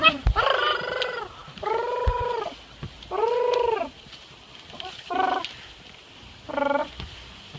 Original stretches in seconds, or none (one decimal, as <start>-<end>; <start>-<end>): 0.0-6.8